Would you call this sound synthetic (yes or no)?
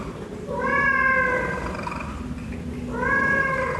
no